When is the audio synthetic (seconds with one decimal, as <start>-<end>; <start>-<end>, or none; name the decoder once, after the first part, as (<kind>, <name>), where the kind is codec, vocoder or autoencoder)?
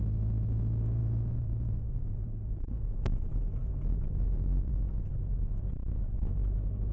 1.0-5.1 (vocoder, BigVGAN v2)